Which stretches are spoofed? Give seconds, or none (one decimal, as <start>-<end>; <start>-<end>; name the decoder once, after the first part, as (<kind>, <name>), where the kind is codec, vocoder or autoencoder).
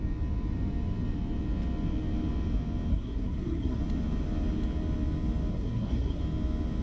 2.9-3.8 (codec, SNAC); 5.5-6.2